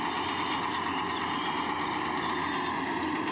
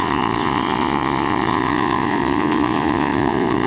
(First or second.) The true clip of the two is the first